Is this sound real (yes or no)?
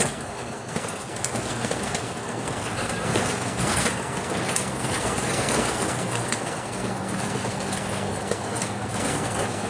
no